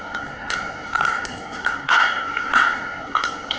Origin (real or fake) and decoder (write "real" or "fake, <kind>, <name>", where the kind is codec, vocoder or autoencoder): fake, codec, SNAC